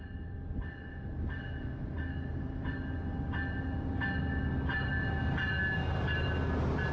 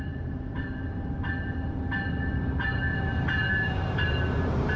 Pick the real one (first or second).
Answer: first